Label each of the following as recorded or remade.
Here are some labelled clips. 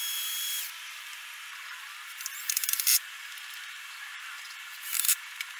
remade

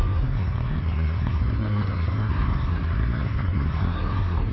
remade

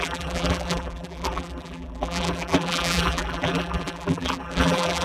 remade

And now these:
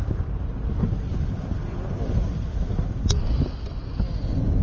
recorded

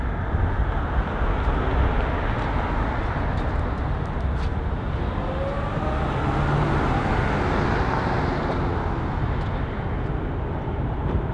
recorded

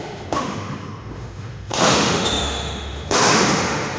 remade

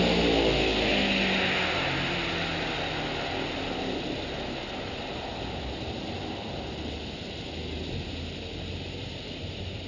recorded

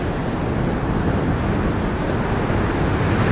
recorded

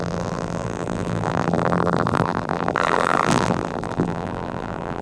remade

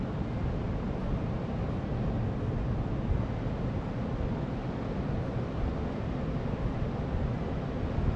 recorded